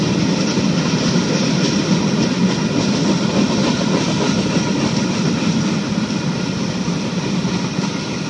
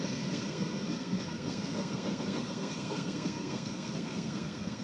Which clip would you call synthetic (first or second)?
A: second